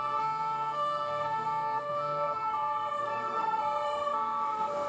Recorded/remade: remade